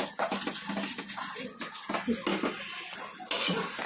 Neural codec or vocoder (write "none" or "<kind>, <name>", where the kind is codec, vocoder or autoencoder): none